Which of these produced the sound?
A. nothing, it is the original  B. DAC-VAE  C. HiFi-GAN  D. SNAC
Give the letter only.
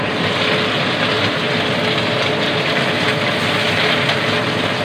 A